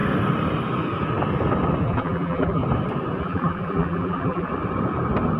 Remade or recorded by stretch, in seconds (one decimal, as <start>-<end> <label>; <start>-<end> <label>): 0.0-1.8 recorded; 1.8-2.6 remade; 2.6-3.2 recorded; 3.2-4.5 remade; 4.5-5.4 recorded